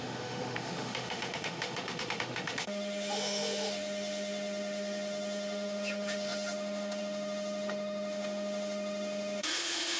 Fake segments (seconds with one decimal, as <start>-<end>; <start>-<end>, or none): 0.0-10.0